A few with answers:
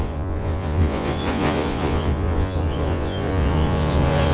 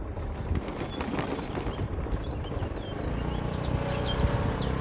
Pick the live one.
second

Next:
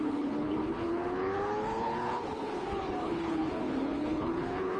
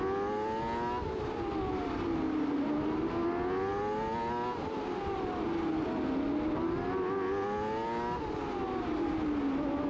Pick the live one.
second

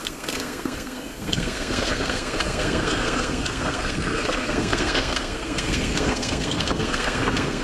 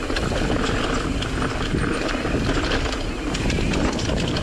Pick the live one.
second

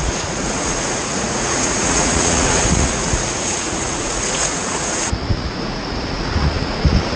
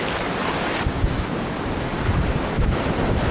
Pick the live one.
second